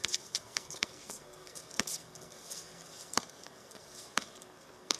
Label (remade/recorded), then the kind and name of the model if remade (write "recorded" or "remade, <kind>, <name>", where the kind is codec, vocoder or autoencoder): remade, codec, SNAC